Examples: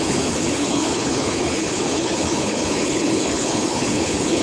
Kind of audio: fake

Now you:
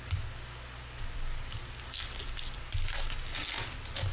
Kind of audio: real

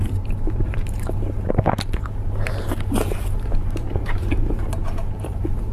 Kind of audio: fake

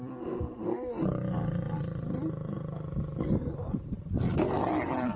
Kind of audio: real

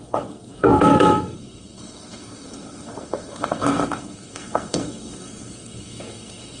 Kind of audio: fake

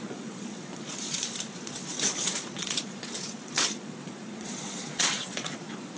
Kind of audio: fake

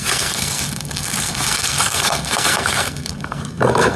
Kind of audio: fake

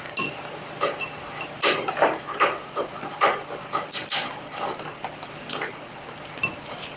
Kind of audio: real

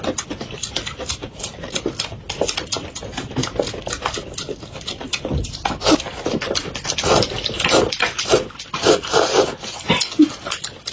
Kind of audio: real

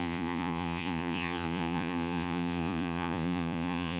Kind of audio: fake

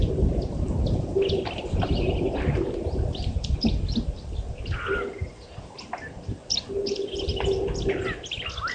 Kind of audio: real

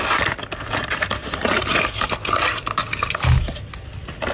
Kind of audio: real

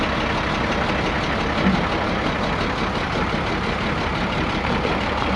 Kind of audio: real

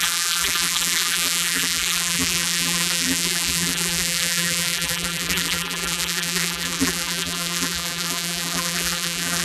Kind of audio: fake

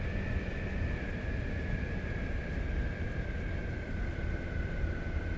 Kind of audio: real